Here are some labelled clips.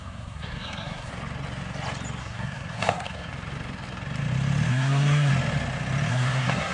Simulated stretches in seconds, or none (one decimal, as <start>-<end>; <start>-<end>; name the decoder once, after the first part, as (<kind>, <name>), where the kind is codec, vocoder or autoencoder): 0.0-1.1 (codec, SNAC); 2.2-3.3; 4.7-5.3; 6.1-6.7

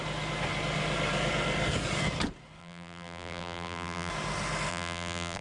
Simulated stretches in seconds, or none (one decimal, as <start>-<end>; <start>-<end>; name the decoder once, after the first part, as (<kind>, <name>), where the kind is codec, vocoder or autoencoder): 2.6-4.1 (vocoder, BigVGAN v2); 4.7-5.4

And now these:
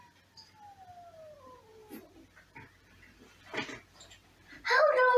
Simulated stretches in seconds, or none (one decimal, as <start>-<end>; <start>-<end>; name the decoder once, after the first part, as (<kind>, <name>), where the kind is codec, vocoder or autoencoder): 1.8-5.2 (vocoder, BigVGAN v2)